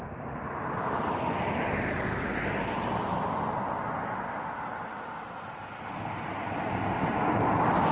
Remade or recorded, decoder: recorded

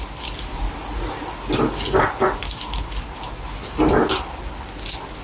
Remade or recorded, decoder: recorded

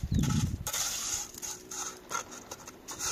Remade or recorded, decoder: remade, vocoder, BigVGAN v2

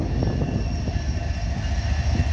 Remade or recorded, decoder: recorded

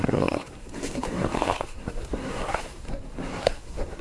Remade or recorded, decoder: remade, codec, SNAC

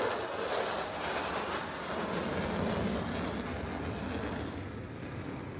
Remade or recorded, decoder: recorded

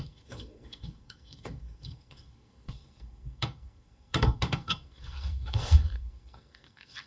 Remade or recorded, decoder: remade, codec, SNAC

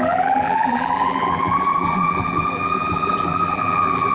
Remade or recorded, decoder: remade, vocoder, BigVGAN v2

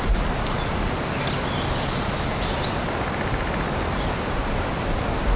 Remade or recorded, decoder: recorded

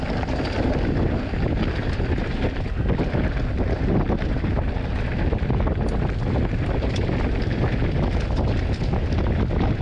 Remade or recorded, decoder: recorded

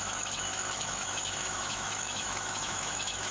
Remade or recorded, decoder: remade, autoencoder, DAC-VAE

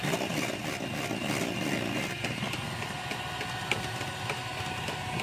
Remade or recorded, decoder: recorded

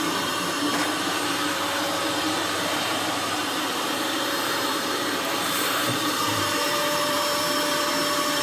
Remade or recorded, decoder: remade, vocoder, BigVGAN v2